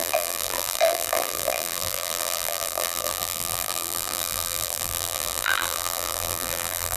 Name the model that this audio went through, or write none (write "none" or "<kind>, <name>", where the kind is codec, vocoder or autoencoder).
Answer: vocoder, BigVGAN v2